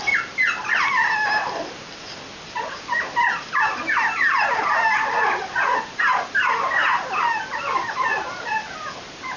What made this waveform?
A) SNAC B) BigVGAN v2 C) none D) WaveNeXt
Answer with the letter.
C